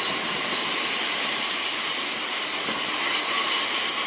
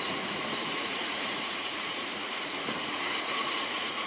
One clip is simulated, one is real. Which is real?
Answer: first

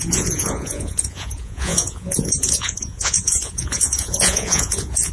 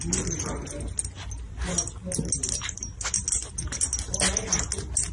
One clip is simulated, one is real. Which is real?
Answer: second